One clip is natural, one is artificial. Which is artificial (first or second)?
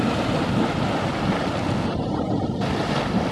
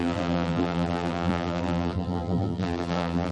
second